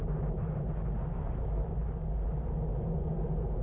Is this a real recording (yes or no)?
yes